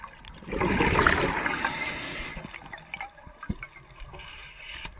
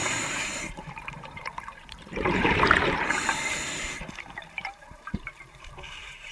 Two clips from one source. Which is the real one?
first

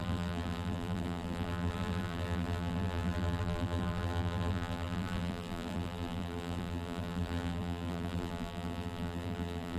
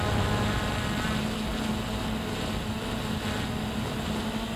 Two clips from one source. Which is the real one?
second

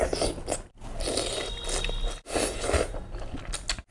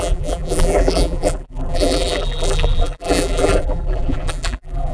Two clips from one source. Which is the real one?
first